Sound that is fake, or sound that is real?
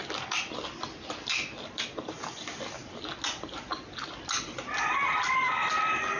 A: real